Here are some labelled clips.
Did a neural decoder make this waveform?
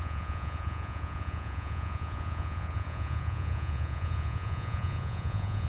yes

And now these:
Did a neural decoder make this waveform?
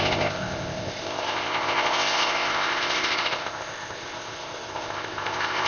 yes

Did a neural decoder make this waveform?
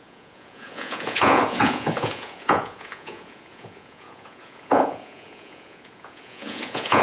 yes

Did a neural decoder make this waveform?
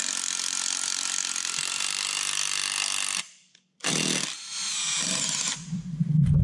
no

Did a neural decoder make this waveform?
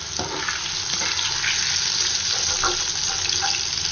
no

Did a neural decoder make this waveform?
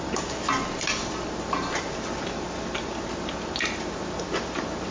no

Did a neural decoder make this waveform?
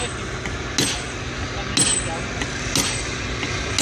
no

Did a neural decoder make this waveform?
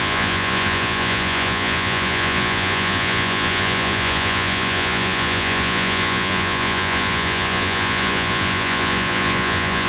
yes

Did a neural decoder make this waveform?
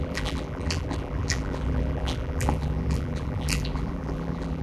yes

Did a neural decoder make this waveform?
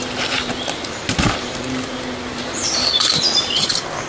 yes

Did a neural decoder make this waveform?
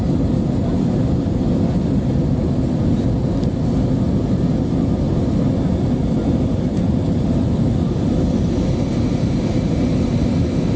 no